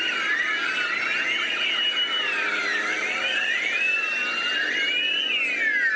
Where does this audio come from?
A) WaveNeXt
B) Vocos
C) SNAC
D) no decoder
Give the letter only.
D